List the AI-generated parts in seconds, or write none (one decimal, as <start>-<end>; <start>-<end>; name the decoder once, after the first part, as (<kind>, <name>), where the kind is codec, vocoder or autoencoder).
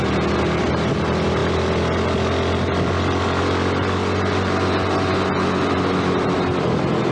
none